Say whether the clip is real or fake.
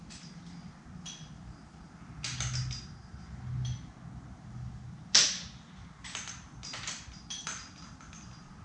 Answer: real